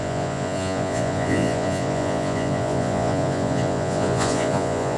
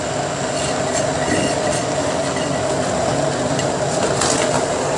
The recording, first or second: second